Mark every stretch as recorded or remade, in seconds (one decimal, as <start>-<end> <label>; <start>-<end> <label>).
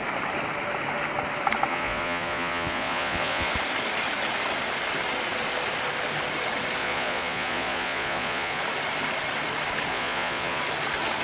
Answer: 0.0-1.7 recorded; 1.7-3.5 remade; 3.5-6.8 recorded; 6.8-8.6 remade; 8.6-9.9 recorded; 9.9-10.6 remade; 10.6-11.2 recorded